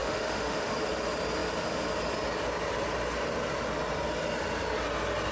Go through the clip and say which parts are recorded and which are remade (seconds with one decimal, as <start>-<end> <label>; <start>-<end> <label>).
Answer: 0.0-0.7 remade; 0.7-5.3 recorded